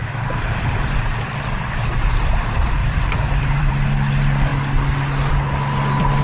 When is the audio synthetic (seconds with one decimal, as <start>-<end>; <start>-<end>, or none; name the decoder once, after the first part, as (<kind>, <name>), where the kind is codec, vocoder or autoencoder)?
2.8-3.7 (vocoder, BigVGAN v2)